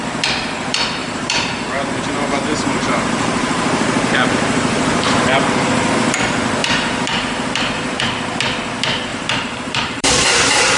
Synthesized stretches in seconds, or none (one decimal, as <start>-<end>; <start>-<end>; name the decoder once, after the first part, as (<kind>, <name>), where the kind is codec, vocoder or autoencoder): 1.0-5.7 (vocoder, BigVGAN v2); 6.6-8.0; 9.1-10.8